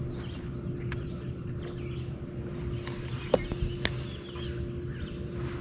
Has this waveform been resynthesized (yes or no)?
no